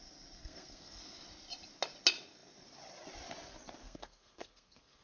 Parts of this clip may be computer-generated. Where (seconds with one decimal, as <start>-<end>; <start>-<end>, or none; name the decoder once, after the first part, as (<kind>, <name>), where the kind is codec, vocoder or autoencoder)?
0.4-1.0 (codec, SNAC); 3.8-5.0